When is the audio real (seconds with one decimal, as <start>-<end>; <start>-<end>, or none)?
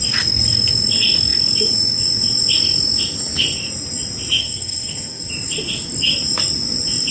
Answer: 0.0-4.4; 5.3-7.1